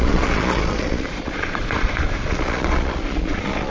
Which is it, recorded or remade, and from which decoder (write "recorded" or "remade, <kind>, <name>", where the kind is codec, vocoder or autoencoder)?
remade, vocoder, Vocos